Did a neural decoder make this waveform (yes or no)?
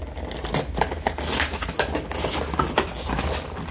no